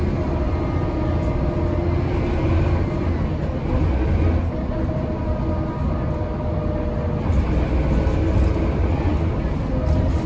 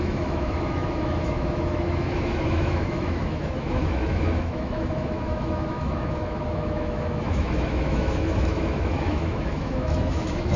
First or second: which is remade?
second